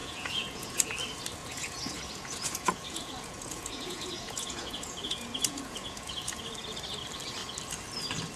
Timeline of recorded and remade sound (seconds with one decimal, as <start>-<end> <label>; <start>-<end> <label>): 0.0-0.9 remade; 0.9-1.4 recorded; 1.4-6.4 remade; 6.4-8.4 recorded